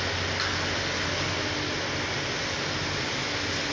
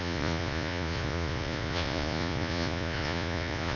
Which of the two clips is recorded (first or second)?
first